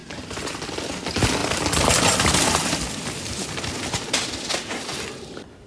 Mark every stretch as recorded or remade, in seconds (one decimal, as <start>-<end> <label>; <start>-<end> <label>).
0.0-0.7 remade; 0.7-5.7 recorded